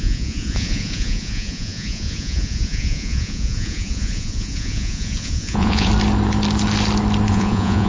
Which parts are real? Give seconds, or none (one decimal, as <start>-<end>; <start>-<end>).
5.9-7.3